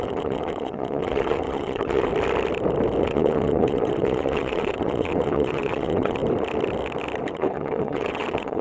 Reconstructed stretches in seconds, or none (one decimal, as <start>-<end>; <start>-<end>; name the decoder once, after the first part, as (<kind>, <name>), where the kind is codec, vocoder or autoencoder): 0.0-2.1 (vocoder, WaveNeXt); 3.0-6.2; 7.3-8.6